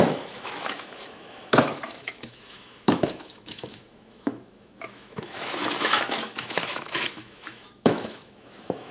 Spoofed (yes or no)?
yes